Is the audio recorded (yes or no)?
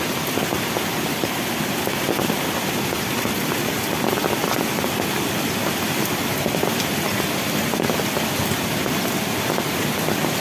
yes